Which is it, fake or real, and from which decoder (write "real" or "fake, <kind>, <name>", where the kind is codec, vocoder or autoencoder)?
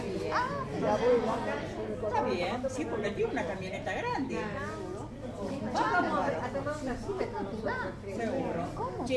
real